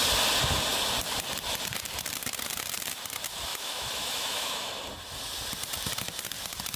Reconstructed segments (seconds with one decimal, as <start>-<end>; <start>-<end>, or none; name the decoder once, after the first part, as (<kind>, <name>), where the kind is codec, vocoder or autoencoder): 3.5-4.7 (autoencoder, DAC-VAE)